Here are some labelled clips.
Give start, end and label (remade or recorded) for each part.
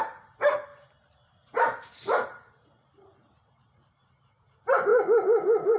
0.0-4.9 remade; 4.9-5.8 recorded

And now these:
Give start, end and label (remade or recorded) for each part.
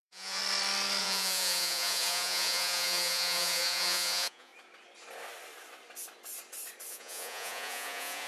0.0-0.4 remade; 0.4-1.0 recorded; 1.0-4.5 remade; 4.5-6.9 recorded; 6.9-8.3 remade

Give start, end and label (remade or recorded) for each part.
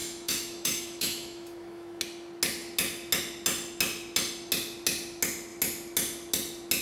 0.0-2.0 remade; 2.0-6.8 recorded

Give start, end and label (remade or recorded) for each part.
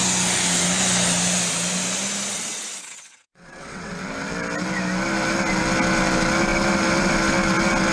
0.0-2.3 recorded; 2.3-3.9 remade; 3.9-7.9 recorded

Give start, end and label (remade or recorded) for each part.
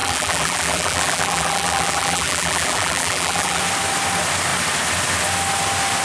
0.0-3.6 remade; 3.6-6.0 recorded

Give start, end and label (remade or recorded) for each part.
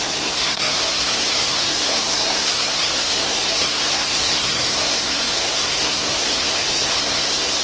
0.0-7.6 remade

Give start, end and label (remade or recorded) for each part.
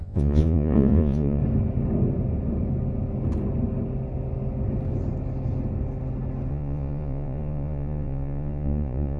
0.0-1.4 remade; 1.4-6.5 recorded; 6.5-9.2 remade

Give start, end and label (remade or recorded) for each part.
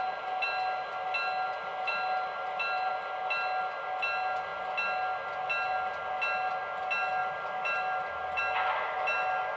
0.0-1.7 recorded; 1.7-2.9 remade; 2.9-7.2 recorded; 7.2-8.4 remade; 8.4-9.6 recorded